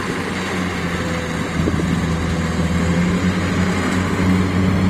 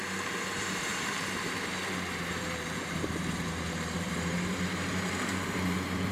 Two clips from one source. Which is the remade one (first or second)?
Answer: second